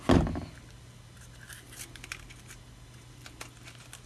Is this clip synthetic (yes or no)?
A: no